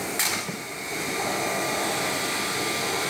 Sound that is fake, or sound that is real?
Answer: real